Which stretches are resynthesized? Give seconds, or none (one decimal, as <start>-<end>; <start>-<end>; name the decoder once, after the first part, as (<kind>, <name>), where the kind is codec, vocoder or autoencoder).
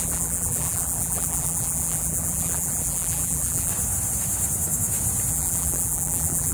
0.0-3.7 (vocoder, BigVGAN v2); 5.3-6.5